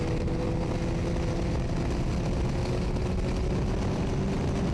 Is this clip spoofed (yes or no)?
no